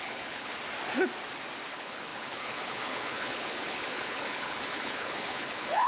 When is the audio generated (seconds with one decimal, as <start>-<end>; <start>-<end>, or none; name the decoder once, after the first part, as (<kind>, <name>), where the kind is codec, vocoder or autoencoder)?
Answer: 0.0-0.5 (codec, HILCodec); 1.7-5.9